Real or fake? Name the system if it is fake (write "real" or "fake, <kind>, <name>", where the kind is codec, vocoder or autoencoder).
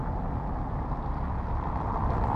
real